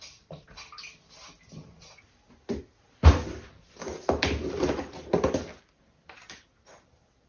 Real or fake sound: real